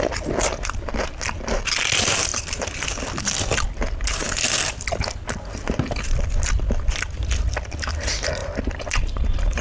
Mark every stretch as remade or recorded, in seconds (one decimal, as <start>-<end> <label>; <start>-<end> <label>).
0.0-9.6 recorded